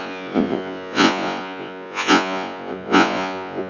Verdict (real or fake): fake